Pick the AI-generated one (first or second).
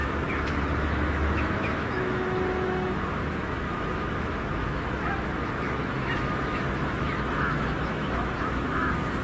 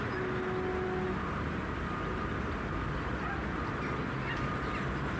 first